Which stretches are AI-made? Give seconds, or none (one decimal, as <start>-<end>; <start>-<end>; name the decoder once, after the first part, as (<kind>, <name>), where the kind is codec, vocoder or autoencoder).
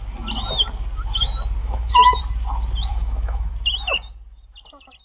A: 1.6-2.2 (autoencoder, DAC-VAE); 2.9-3.5